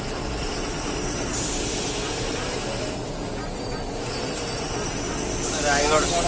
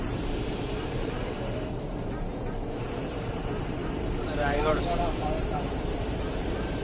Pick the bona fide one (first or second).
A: first